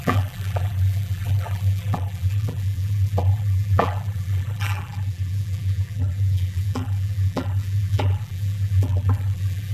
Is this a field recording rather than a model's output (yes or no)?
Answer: no